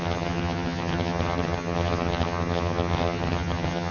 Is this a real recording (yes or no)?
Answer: no